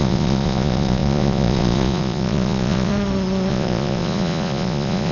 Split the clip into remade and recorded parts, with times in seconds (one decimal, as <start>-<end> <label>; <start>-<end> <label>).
0.0-2.9 remade; 2.9-3.5 recorded; 3.5-5.1 remade